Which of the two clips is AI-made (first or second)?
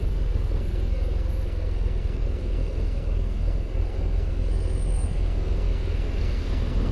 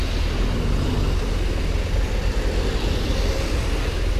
first